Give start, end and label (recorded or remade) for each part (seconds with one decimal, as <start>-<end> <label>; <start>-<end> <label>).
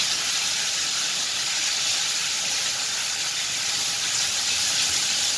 0.0-5.4 recorded